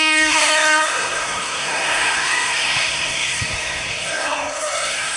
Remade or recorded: remade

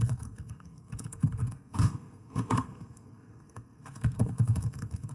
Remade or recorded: remade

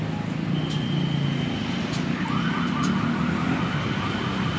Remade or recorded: recorded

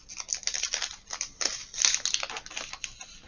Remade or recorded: recorded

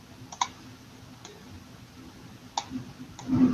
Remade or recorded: recorded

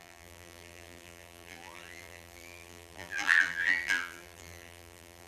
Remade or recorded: remade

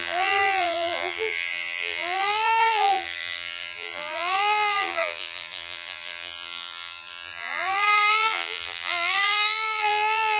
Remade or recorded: remade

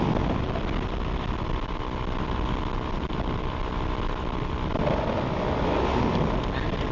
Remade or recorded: recorded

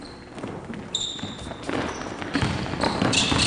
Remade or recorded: recorded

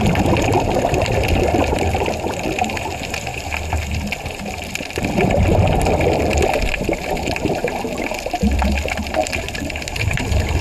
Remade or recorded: remade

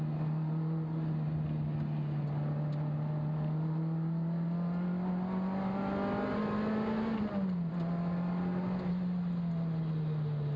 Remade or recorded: recorded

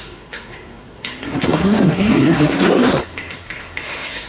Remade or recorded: remade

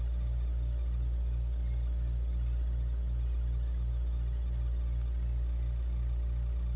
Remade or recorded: recorded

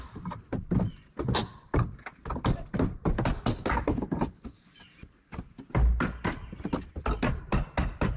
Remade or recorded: recorded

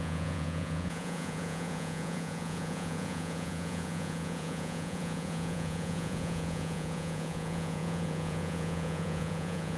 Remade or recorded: remade